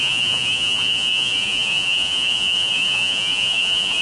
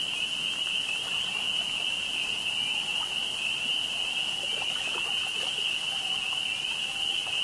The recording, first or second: second